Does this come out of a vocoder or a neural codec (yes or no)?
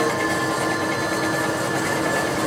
no